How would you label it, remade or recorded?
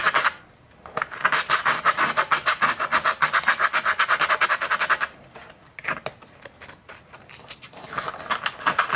recorded